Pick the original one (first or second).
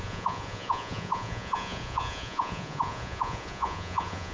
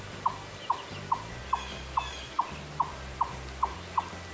second